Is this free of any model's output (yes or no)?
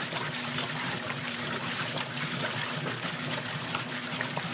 no